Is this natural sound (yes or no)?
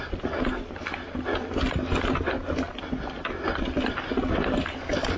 yes